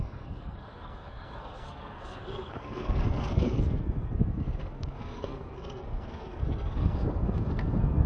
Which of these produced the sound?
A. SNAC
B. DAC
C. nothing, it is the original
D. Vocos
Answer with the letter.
A